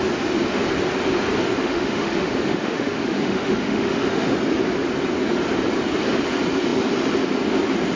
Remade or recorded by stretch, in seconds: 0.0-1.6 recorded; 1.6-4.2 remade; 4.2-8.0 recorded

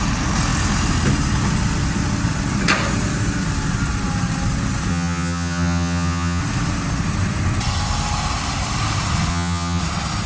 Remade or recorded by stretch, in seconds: 0.0-4.9 recorded; 4.9-6.4 remade; 6.4-9.3 recorded; 9.3-9.8 remade; 9.8-10.3 recorded

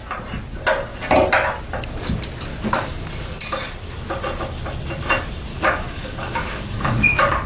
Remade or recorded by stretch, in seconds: 0.0-2.5 recorded; 2.5-3.1 remade; 3.1-5.5 recorded; 5.5-7.5 remade